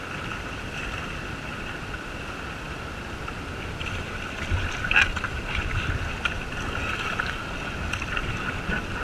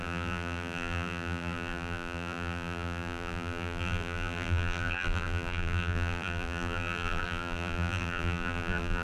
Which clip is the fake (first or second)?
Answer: second